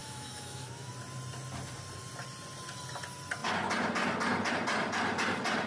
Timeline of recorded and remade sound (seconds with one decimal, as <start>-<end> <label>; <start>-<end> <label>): 0.0-0.9 remade; 0.9-5.7 recorded